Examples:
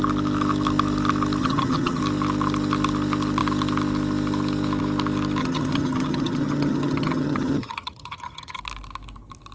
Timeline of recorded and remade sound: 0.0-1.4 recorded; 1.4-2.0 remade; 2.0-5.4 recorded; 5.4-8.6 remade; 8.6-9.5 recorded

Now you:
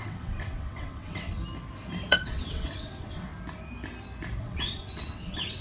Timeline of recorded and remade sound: 0.0-1.4 remade; 1.4-2.1 recorded; 2.1-3.3 remade; 3.3-4.4 recorded; 4.4-5.6 remade

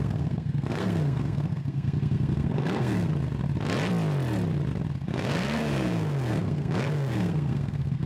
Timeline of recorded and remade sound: 0.0-3.1 remade; 3.1-4.9 recorded; 4.9-8.1 remade

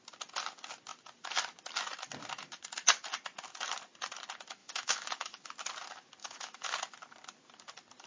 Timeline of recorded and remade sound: 0.0-4.6 recorded; 4.6-5.5 remade; 5.5-6.2 recorded; 6.2-6.7 remade; 6.7-8.1 recorded

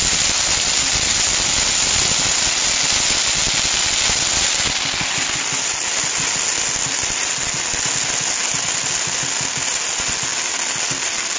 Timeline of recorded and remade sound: 0.0-11.4 recorded

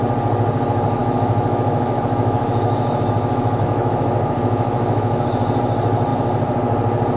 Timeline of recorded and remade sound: 0.0-1.0 recorded; 1.0-5.3 remade; 5.3-7.2 recorded